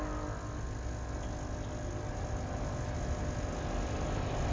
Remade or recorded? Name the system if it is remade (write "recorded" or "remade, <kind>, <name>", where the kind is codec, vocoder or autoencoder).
recorded